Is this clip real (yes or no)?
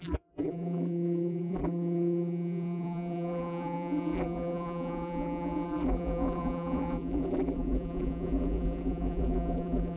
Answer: no